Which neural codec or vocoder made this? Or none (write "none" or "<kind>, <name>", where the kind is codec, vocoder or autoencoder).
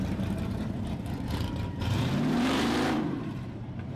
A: vocoder, BigVGAN v2